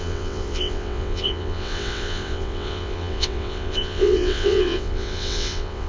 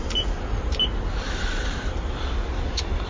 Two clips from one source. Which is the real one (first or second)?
second